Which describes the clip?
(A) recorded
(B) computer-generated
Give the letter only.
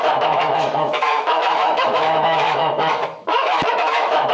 B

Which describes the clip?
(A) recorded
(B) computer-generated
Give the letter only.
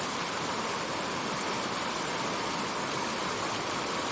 A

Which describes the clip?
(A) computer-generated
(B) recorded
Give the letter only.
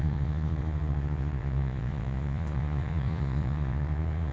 A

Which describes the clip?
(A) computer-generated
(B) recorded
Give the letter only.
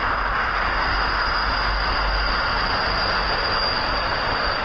B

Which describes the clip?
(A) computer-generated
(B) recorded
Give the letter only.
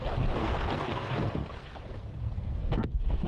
A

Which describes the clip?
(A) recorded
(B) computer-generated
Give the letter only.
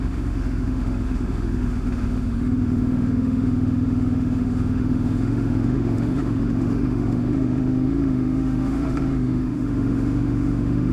B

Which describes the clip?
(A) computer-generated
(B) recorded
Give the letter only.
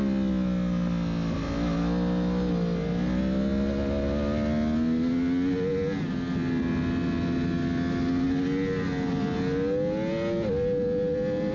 B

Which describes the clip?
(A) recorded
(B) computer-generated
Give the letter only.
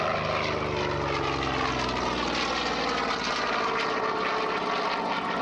A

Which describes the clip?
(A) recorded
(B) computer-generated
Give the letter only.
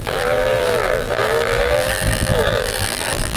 B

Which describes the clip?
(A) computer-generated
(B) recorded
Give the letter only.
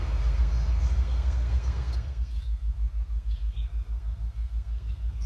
A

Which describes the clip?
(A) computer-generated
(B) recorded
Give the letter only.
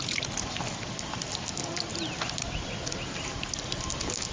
B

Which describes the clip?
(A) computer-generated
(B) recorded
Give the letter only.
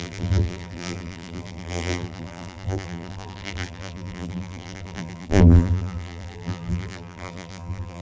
A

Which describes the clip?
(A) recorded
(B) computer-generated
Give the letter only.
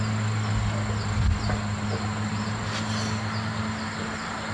A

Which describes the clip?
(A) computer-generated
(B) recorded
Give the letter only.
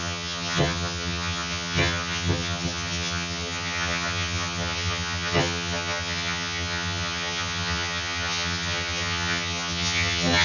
A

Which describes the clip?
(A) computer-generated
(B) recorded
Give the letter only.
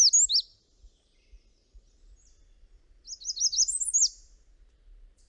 B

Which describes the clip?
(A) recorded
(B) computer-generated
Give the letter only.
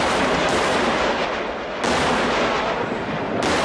A